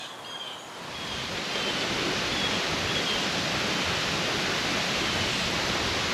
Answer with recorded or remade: recorded